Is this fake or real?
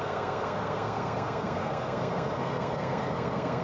fake